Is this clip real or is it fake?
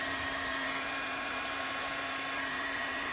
fake